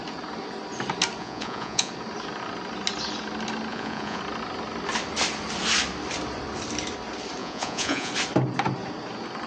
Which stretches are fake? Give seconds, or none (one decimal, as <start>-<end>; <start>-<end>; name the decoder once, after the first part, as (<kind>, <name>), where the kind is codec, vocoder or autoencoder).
1.2-1.9 (vocoder, Vocos); 3.7-4.2; 7.4-8.1